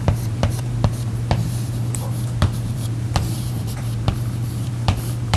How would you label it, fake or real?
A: fake